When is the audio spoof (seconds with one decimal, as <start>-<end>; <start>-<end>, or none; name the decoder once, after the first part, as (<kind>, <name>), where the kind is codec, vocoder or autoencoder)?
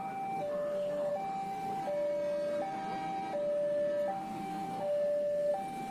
0.4-1.1 (codec, SNAC); 4.1-5.5